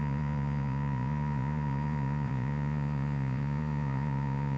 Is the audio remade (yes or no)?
yes